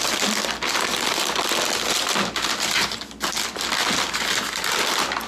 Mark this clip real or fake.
real